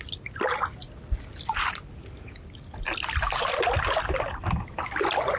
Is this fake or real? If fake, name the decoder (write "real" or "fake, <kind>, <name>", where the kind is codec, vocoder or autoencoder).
real